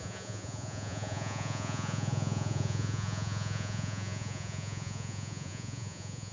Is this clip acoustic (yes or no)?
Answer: no